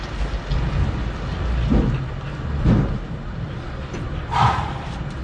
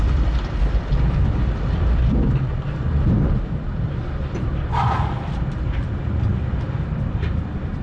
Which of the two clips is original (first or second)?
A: first